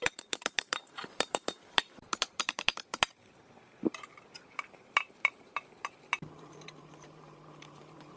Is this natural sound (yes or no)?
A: no